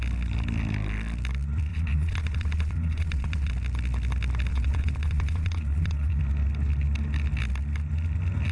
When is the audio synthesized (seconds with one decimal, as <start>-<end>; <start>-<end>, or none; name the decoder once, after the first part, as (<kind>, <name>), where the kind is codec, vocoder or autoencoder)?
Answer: 1.7-3.5 (vocoder, Vocos); 4.5-6.2